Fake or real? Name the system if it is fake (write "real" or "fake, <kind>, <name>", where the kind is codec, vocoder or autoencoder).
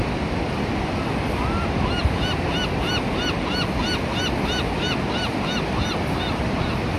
real